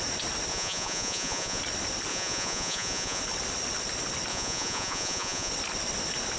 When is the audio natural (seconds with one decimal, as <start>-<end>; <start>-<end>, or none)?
0.0-0.5; 1.6-2.1; 3.2-4.3; 5.5-6.4